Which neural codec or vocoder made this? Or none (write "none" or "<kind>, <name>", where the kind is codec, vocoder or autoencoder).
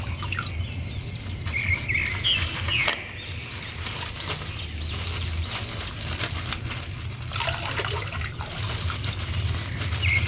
none